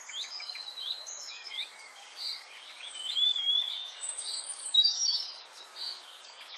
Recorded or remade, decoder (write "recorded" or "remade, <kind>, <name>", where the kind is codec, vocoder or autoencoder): remade, codec, DAC